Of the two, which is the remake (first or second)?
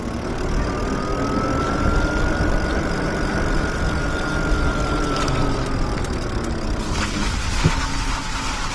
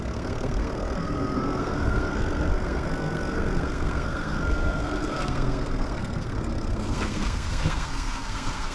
second